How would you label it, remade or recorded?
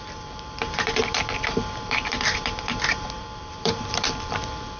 remade